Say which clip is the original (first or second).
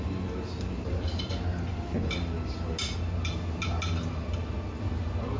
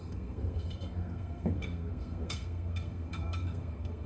first